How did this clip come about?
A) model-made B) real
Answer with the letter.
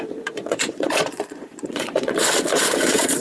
A